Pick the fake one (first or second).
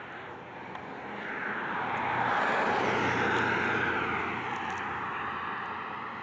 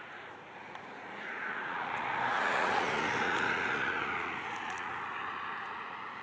second